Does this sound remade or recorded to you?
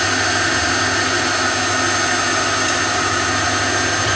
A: recorded